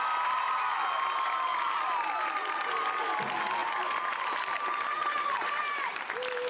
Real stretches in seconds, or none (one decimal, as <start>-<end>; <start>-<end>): 0.0-3.6; 4.1-5.0; 5.9-6.5